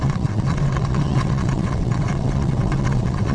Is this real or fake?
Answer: fake